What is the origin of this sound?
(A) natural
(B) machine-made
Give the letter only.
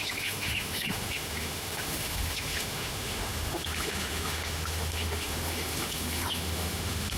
B